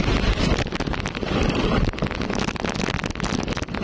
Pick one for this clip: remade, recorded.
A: recorded